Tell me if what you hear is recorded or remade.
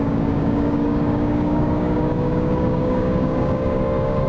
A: remade